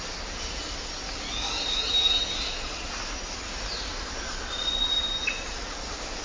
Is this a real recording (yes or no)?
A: yes